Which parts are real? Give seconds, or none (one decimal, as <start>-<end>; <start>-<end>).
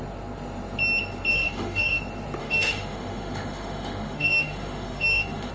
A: 0.0-1.3; 2.0-2.4